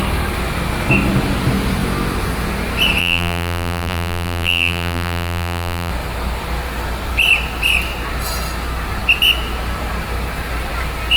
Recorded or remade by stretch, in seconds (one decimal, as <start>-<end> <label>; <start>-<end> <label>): 0.0-3.0 recorded; 3.0-5.9 remade; 5.9-11.2 recorded